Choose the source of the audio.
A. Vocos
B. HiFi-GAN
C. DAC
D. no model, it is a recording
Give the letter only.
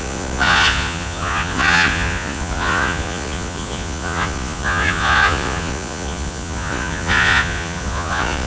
A